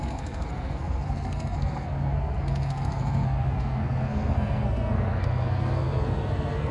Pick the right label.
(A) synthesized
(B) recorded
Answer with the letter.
A